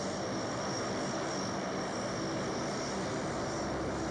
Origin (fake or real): real